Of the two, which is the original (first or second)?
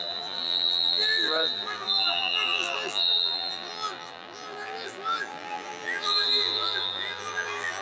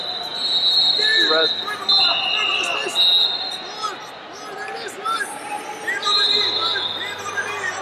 second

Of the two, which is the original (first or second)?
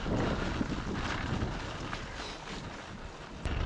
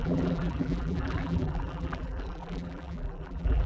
first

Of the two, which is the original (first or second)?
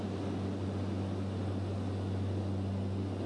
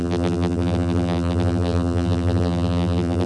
first